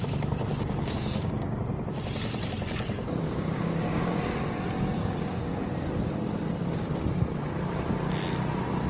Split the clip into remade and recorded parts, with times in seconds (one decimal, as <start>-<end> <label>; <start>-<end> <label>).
0.0-0.5 recorded; 0.5-1.6 remade; 1.6-3.2 recorded; 3.2-4.2 remade; 4.2-5.0 recorded; 5.0-5.6 remade; 5.6-8.9 recorded